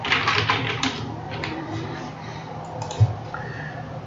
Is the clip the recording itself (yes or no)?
no